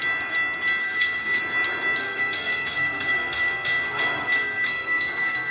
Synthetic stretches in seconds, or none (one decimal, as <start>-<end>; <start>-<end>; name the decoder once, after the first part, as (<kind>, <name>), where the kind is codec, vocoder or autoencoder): 0.8-1.4 (codec, SNAC); 2.0-5.5